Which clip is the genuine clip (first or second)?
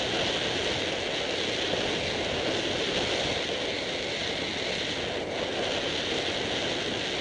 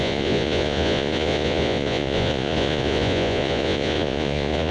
first